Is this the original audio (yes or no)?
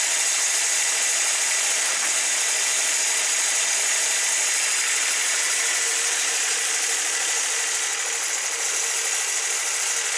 yes